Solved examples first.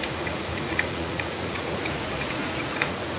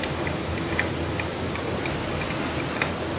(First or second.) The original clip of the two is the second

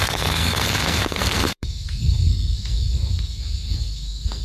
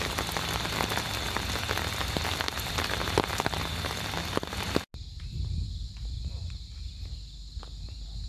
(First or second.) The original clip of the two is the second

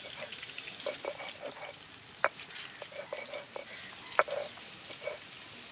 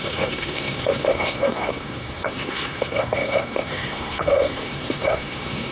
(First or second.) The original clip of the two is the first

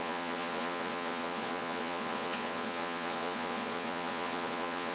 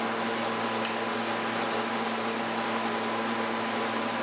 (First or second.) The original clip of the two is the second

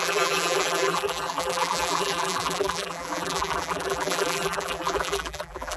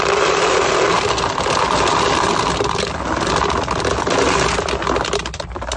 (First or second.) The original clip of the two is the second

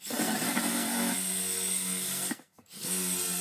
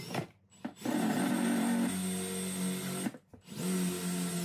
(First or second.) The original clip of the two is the second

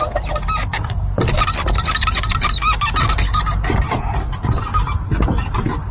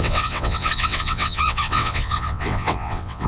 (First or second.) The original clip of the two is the first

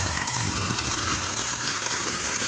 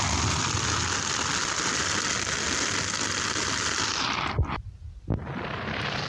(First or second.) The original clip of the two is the second